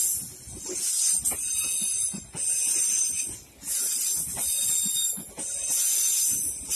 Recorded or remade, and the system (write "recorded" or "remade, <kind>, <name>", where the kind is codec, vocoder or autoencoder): recorded